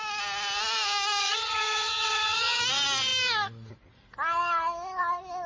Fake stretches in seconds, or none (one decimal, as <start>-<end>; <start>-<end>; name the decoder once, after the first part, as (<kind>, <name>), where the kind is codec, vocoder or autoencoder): 1.2-2.6 (vocoder, HiFi-GAN)